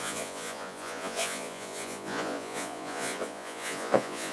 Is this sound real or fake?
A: fake